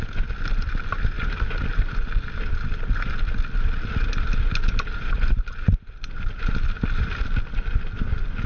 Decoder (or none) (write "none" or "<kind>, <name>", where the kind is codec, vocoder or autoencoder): none